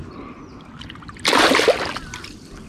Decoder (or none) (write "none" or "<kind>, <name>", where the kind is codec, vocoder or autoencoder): none